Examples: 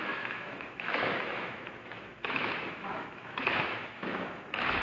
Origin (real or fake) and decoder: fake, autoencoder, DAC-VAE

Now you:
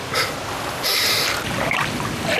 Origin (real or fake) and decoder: real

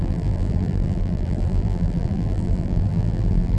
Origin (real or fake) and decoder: fake, vocoder, BigVGAN v2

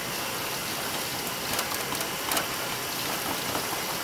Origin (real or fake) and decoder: real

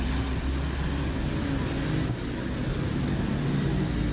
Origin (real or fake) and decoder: real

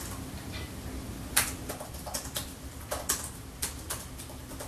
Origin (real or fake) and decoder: real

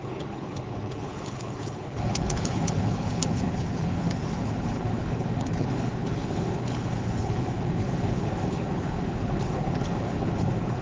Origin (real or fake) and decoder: fake, codec, HILCodec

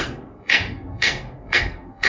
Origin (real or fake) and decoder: fake, codec, SNAC